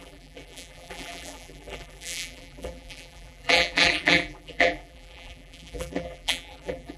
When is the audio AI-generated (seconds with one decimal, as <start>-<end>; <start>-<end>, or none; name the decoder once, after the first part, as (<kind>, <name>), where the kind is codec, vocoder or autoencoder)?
0.0-7.0 (vocoder, BigVGAN v2)